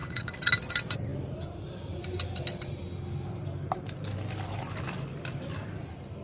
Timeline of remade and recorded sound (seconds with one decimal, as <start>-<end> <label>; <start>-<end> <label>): 0.0-0.5 remade; 0.5-6.2 recorded